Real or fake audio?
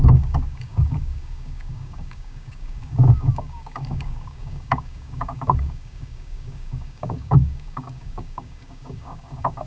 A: fake